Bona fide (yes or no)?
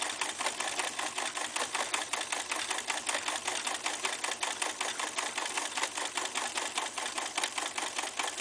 yes